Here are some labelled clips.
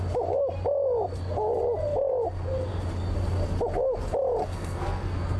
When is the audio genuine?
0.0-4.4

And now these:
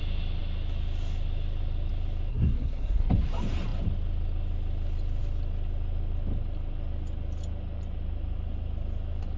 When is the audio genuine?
0.0-2.3; 3.1-9.4

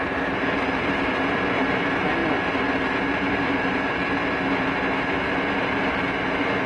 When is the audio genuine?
2.2-3.0; 4.0-5.3

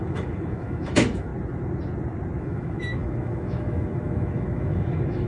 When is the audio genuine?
1.3-2.4

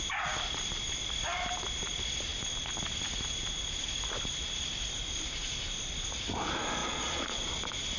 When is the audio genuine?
0.0-6.8; 7.4-8.0

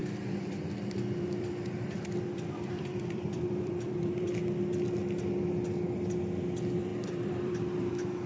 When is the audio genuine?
4.3-6.9; 7.9-8.3

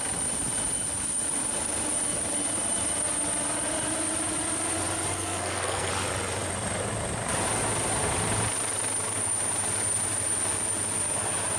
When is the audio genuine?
0.0-5.1; 5.9-11.6

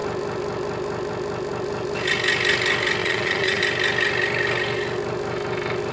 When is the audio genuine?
0.0-3.0; 3.6-5.9